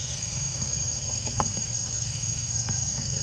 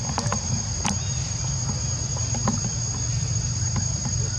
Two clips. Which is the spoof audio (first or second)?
first